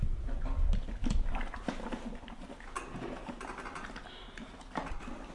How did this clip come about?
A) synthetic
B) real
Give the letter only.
B